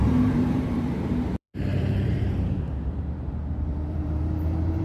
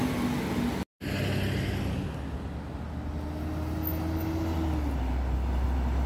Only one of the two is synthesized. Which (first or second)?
first